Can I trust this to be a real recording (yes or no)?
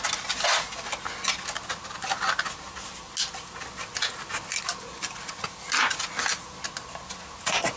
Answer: yes